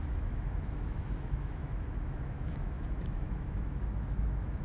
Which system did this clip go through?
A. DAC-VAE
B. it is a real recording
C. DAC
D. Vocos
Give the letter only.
A